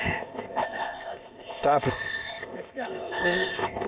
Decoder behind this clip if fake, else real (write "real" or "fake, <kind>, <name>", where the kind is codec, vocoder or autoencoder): fake, codec, ZipCodec